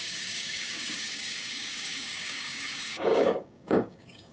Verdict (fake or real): fake